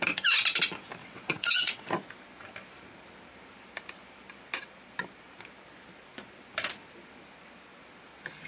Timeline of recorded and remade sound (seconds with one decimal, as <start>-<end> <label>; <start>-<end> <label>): 0.0-1.0 recorded; 1.0-1.9 remade; 1.9-8.5 recorded

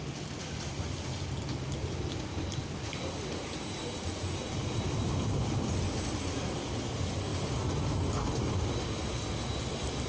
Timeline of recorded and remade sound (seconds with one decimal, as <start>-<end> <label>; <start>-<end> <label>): 0.0-10.1 recorded

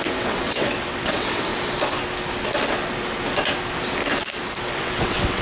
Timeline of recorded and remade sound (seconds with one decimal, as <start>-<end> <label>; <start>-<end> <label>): 0.0-1.5 remade; 1.5-4.7 recorded; 4.7-5.4 remade

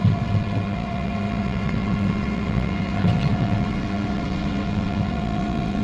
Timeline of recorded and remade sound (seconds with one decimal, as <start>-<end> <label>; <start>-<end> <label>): 0.0-5.8 remade